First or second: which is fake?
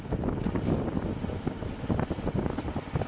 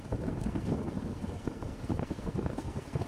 second